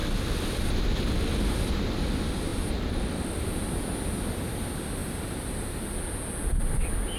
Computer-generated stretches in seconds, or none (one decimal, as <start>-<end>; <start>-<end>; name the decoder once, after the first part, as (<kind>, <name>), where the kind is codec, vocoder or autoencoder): 0.0-0.7 (vocoder, BigVGAN v2); 2.5-3.1; 5.0-5.8